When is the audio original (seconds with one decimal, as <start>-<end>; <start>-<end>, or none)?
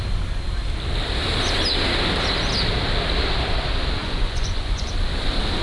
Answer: 0.0-4.0; 4.9-5.6